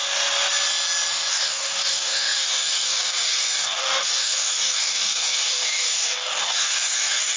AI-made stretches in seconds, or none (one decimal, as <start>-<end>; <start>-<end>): 1.3-7.4

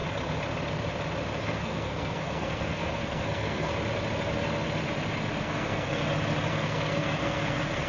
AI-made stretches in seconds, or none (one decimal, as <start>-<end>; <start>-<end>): 1.4-3.7; 5.4-6.0; 6.5-7.9

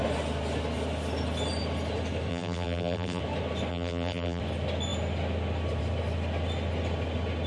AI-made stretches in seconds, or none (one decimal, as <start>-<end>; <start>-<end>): 2.3-3.2; 3.7-4.4

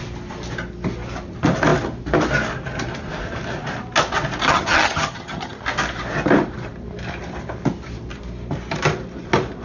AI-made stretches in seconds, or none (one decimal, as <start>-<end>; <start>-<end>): 4.5-5.6